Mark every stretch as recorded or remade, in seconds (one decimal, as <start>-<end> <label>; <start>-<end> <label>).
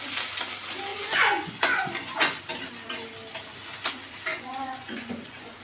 0.0-0.9 recorded; 0.9-2.4 remade; 2.4-4.3 recorded; 4.3-5.6 remade